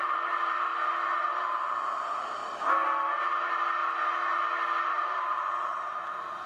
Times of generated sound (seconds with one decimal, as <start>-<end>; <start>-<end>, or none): 0.0-0.7; 1.5-2.4; 3.4-3.8; 4.8-6.5